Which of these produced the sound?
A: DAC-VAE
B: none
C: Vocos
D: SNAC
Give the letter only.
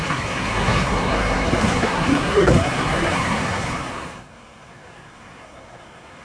D